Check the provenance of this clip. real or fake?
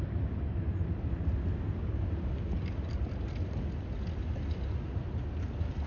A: real